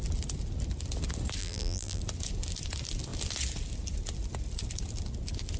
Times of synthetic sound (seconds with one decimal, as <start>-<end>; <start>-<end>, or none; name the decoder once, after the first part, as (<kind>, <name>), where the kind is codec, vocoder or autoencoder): 1.4-2.0 (vocoder, BigVGAN v2)